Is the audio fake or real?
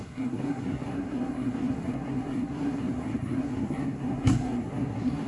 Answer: fake